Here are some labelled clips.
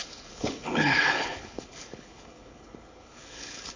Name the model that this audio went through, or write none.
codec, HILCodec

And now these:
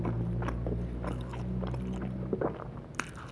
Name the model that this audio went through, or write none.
none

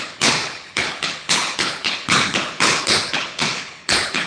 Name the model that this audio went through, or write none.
codec, HILCodec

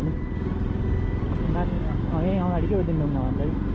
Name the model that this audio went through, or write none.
none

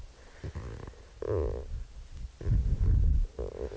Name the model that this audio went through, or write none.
none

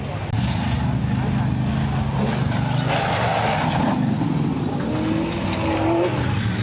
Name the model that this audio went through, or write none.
none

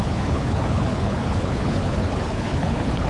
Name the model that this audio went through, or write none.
codec, HILCodec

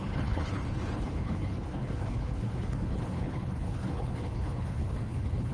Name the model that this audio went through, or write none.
codec, HILCodec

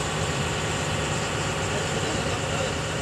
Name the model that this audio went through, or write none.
none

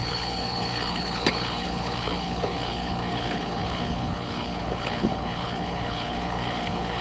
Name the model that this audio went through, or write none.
codec, HILCodec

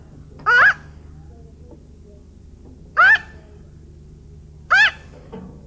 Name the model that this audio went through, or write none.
none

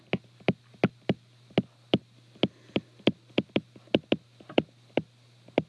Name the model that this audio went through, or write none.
none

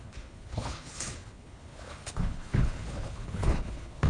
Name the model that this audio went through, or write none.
codec, HILCodec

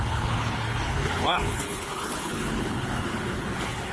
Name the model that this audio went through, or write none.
codec, HILCodec